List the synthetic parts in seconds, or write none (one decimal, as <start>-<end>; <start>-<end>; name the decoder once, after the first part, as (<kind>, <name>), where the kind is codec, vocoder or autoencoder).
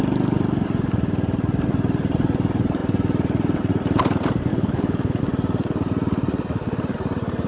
4.5-5.2 (codec, HILCodec)